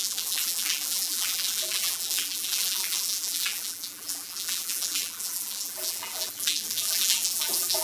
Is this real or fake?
fake